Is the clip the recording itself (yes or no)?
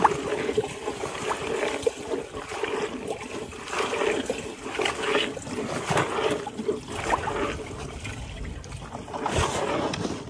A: yes